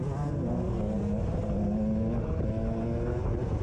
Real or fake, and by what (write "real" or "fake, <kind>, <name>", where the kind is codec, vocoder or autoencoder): real